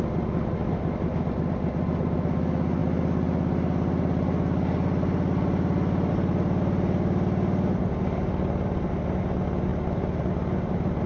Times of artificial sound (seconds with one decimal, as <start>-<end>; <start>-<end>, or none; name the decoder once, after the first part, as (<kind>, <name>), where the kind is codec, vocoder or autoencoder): none